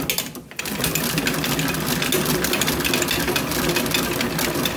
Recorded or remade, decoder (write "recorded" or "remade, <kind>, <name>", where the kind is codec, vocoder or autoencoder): recorded